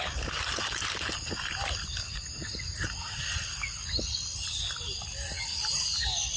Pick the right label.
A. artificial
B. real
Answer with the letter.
B